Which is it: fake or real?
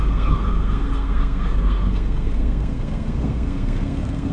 fake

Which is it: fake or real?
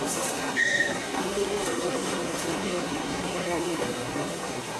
fake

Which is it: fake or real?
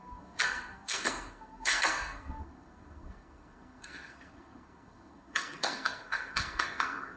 fake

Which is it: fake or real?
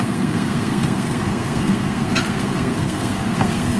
fake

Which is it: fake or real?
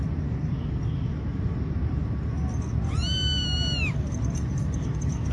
real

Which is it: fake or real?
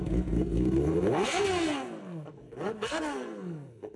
fake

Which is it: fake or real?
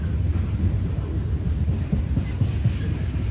real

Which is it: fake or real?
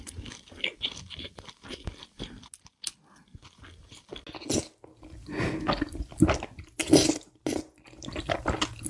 real